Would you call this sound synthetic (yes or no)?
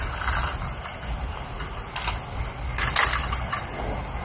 no